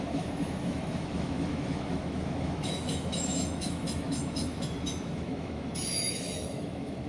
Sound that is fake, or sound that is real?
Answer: fake